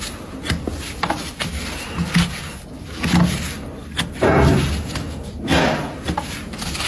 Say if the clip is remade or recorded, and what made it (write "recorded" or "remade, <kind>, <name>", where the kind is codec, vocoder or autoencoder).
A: recorded